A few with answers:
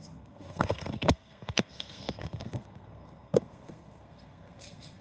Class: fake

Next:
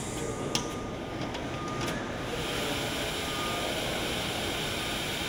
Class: real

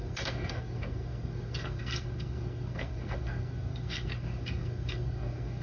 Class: fake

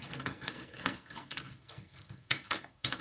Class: fake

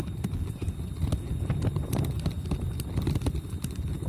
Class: real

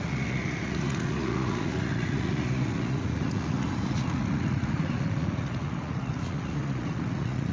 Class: fake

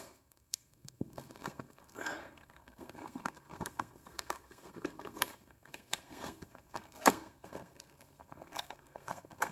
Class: fake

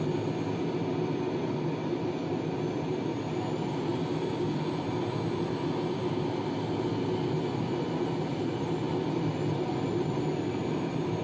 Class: real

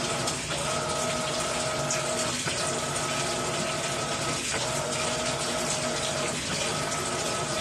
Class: real